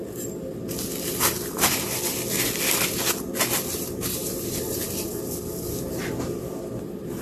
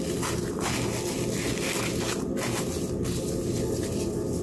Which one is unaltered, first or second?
second